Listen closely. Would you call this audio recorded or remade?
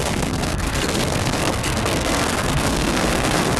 remade